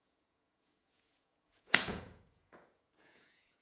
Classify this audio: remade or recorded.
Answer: remade